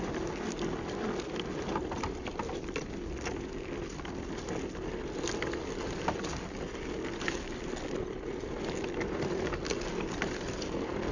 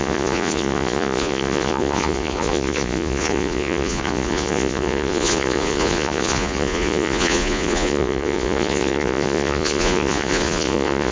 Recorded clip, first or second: first